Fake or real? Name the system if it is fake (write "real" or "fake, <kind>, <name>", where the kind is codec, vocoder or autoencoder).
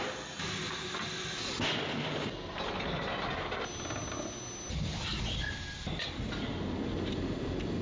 real